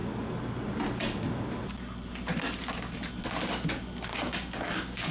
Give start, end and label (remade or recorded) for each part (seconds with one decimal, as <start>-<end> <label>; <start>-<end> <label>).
0.0-4.1 recorded; 4.1-5.1 remade